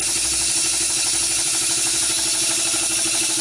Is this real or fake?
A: real